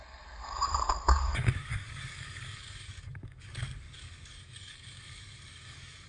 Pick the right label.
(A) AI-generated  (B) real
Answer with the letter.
A